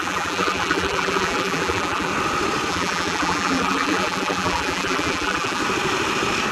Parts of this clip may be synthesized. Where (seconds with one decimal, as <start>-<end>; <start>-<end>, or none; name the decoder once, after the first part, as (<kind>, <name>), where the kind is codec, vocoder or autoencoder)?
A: 0.0-2.1 (vocoder, BigVGAN v2); 2.7-5.6